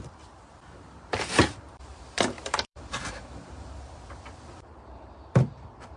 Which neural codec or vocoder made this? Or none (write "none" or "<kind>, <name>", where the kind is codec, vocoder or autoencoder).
vocoder, BigVGAN v2